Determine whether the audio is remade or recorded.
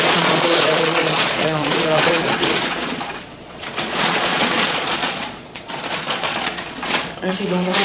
remade